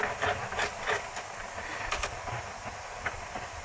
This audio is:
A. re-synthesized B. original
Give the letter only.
B